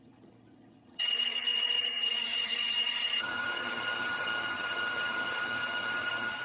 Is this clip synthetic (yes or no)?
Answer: yes